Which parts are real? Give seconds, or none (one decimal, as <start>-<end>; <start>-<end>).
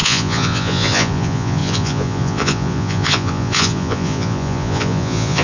none